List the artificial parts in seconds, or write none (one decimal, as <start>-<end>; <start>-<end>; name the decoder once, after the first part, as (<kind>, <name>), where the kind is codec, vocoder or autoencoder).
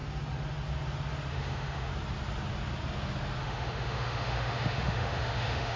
1.3-1.9 (autoencoder, DAC-VAE); 3.4-5.8